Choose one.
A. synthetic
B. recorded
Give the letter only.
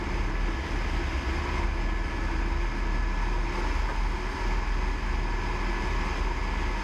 B